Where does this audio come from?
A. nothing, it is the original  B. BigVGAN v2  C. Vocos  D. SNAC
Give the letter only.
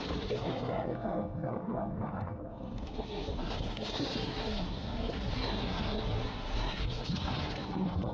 D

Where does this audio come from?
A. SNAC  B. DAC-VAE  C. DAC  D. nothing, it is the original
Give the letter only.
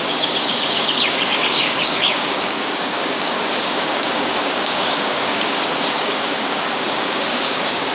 C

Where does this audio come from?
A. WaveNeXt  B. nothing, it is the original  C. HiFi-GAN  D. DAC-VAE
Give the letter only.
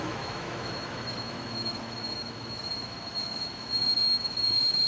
D